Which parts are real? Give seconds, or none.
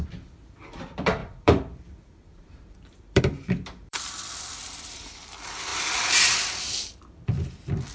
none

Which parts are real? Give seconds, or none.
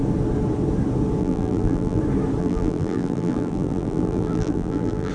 0.0-1.2; 2.0-2.4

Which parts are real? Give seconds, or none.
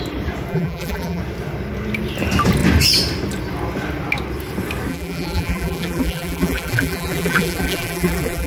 0.0-0.5; 1.2-4.9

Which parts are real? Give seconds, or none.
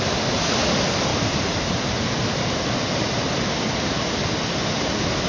0.0-1.1; 3.1-5.3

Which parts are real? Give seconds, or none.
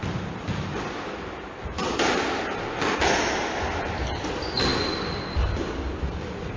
0.0-6.6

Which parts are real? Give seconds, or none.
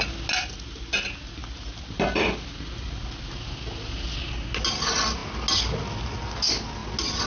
0.0-7.3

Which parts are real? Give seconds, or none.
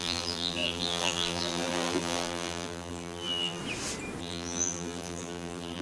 3.6-4.2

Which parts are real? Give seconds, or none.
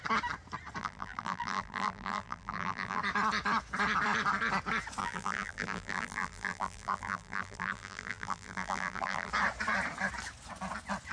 0.0-0.8; 3.0-5.0; 9.3-11.1